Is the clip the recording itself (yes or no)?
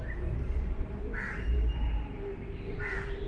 no